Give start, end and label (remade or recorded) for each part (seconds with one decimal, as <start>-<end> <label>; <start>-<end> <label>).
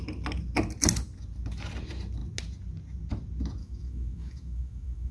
0.0-3.6 recorded; 3.6-5.1 remade